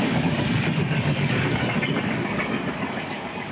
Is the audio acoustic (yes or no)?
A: no